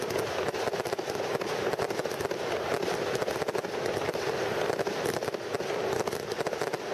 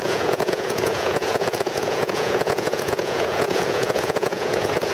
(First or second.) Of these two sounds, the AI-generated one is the second